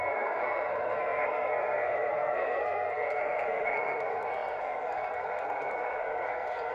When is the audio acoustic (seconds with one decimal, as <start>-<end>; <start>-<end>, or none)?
none